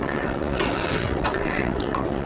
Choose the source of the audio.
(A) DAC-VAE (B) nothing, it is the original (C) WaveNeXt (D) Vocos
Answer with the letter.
C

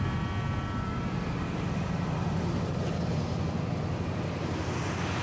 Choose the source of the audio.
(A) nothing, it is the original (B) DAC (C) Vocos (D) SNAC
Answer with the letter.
A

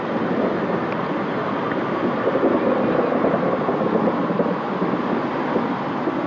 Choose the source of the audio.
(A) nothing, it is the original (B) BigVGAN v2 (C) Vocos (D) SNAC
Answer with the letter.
A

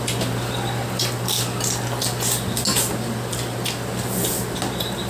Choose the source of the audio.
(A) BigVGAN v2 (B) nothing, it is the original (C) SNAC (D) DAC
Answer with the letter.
B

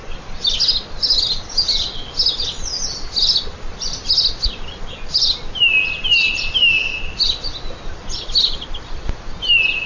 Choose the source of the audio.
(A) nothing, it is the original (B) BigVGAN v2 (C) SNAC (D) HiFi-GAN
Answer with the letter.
A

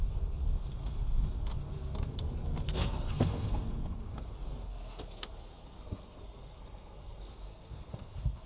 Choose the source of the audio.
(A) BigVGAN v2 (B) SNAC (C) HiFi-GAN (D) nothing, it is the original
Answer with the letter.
B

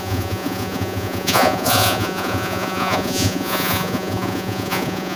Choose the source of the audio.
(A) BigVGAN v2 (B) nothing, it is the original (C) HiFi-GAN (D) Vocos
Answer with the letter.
D